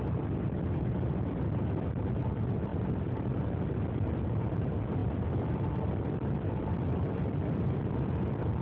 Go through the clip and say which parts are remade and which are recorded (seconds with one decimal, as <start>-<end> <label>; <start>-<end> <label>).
0.0-2.7 recorded; 2.7-4.4 remade; 4.4-5.0 recorded; 5.0-7.8 remade; 7.8-8.6 recorded